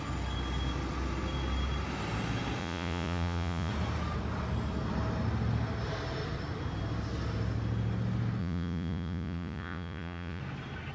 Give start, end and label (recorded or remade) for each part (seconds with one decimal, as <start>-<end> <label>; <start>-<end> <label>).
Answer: 0.0-2.6 recorded; 2.6-3.7 remade; 3.7-8.4 recorded; 8.4-10.4 remade; 10.4-10.9 recorded